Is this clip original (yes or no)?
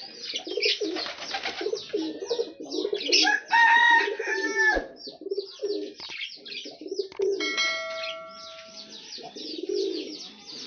yes